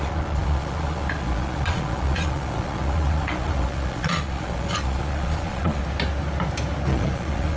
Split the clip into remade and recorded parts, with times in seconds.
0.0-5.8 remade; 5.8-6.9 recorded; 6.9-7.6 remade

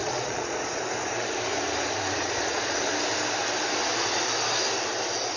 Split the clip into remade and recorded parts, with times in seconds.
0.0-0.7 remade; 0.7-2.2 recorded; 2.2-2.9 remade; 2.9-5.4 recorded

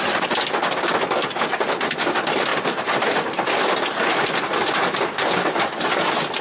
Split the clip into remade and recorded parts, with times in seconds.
0.0-6.4 recorded

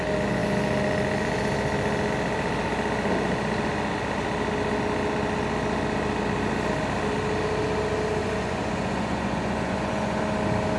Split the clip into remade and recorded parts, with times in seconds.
0.0-8.2 recorded; 8.2-10.2 remade; 10.2-10.8 recorded

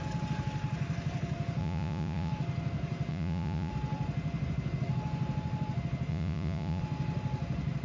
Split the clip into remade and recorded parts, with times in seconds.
0.0-1.6 recorded; 1.6-2.3 remade; 2.3-3.1 recorded; 3.1-3.7 remade; 3.7-6.1 recorded; 6.1-6.8 remade; 6.8-7.8 recorded

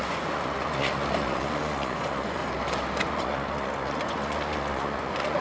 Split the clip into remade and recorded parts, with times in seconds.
0.0-2.4 remade; 2.4-3.0 recorded; 3.0-5.4 remade